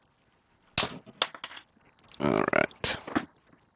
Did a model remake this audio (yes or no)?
no